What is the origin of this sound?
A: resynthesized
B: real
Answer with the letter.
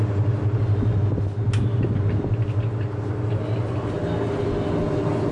B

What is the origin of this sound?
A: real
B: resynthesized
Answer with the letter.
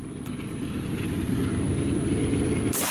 B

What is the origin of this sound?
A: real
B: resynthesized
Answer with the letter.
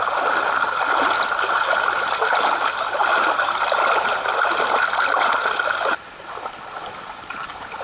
A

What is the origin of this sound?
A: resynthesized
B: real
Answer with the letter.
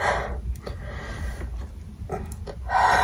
B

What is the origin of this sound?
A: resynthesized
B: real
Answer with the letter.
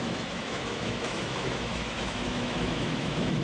A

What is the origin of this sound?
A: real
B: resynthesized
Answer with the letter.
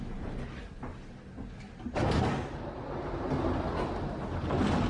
A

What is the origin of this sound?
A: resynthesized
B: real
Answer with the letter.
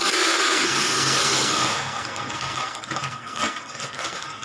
A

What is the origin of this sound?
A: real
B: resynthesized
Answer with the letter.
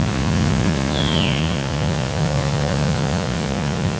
B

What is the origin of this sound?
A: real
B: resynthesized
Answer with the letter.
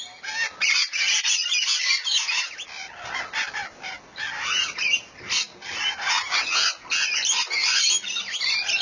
A